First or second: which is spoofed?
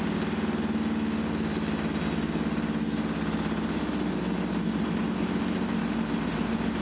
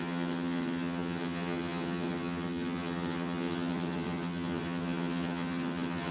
second